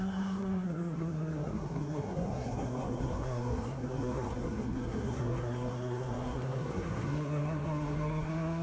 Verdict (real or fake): fake